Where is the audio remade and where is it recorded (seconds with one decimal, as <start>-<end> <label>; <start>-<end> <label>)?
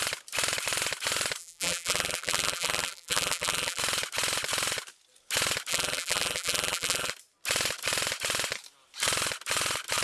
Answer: 0.0-1.4 recorded; 1.4-3.8 remade; 3.8-5.7 recorded; 5.7-7.1 remade; 7.1-10.0 recorded